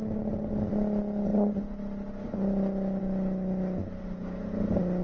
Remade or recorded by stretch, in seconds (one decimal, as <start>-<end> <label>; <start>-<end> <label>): 0.0-5.0 recorded